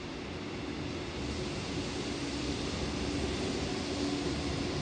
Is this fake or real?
real